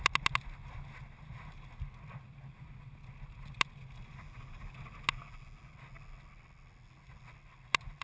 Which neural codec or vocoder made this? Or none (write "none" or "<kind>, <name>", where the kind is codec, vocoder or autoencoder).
none